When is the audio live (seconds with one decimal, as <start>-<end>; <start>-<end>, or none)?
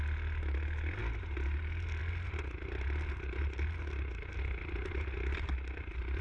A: 0.0-6.2